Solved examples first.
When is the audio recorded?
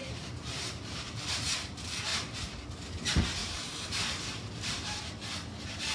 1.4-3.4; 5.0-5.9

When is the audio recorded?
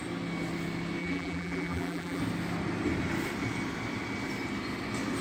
0.0-1.0; 2.2-5.2